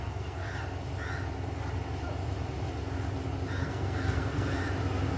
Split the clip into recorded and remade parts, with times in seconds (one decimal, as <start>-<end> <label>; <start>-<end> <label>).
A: 0.0-0.5 remade; 0.5-3.6 recorded; 3.6-4.6 remade; 4.6-5.2 recorded